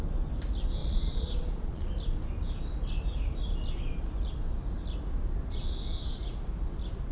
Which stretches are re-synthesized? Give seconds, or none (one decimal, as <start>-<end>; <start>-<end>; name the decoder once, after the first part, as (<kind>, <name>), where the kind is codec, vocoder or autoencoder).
0.8-1.9 (vocoder, Vocos)